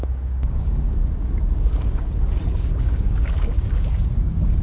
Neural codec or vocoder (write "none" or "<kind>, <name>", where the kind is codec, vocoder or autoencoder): codec, DAC